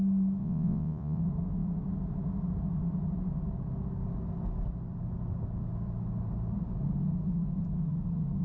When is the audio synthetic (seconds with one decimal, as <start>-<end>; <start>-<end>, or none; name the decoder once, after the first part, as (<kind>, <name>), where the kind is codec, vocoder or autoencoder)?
0.4-1.2 (vocoder, Vocos)